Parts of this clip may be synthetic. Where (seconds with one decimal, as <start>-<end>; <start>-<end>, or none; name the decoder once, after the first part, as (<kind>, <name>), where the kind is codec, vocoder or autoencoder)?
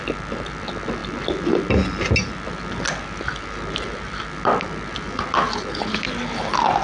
none